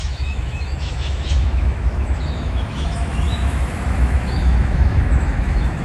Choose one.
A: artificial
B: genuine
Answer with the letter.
A